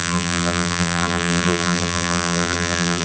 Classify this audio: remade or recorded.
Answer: remade